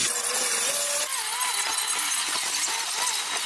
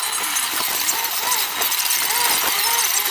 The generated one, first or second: second